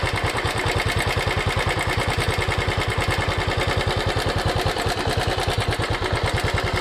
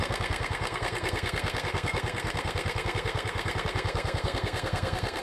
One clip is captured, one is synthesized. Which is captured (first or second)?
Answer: first